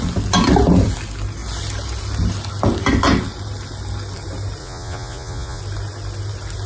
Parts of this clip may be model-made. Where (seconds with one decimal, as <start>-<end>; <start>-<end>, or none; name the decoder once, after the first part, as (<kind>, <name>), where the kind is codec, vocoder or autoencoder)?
4.6-5.6 (vocoder, Vocos)